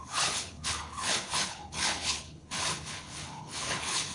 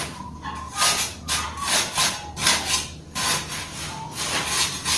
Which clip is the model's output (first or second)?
first